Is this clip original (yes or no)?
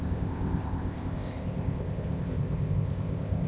no